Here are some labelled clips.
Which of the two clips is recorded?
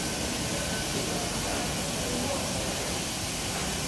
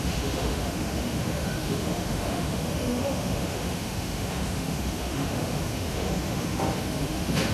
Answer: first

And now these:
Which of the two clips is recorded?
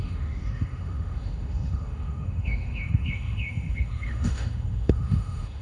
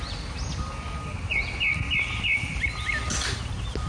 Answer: second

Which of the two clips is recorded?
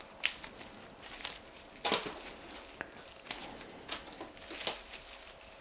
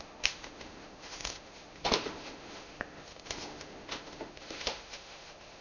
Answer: first